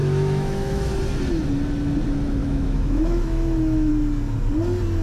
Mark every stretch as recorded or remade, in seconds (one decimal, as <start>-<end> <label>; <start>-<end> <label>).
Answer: 0.0-0.9 remade; 0.9-2.4 recorded; 2.4-3.9 remade; 3.9-5.0 recorded